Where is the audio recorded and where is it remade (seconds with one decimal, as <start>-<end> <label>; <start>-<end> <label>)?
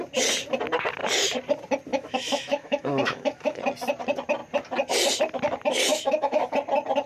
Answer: 0.0-1.9 recorded; 1.9-3.6 remade; 3.6-5.9 recorded; 5.9-6.5 remade; 6.5-7.1 recorded